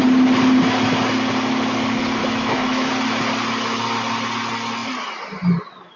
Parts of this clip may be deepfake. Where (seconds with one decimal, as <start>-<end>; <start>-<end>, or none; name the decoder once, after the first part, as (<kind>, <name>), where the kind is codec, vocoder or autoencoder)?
2.2-2.9 (autoencoder, DAC-VAE)